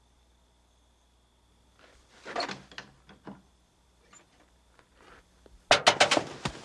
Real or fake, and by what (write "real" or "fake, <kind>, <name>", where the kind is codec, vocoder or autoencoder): real